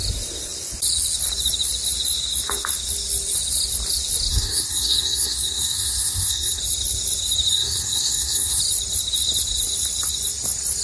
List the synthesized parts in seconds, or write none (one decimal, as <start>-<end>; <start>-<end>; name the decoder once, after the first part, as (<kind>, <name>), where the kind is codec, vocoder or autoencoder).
4.3-6.6 (codec, SNAC); 7.5-8.6